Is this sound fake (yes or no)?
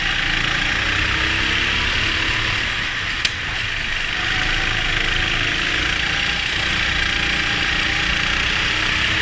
no